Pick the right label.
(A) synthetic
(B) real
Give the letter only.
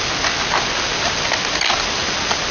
B